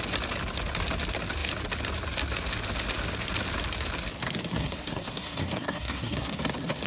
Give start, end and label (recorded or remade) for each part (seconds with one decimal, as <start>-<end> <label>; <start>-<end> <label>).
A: 0.0-4.6 recorded; 4.6-6.4 remade; 6.4-6.9 recorded